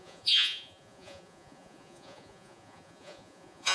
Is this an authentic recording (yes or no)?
no